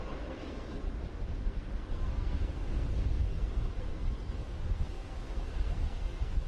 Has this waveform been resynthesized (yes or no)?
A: yes